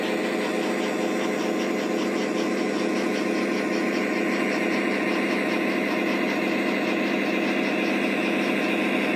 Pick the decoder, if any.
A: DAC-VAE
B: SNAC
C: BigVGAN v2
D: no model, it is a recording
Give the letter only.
D